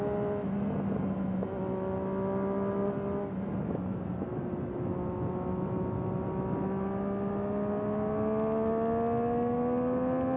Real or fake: real